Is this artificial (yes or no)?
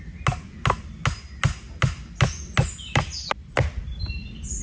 no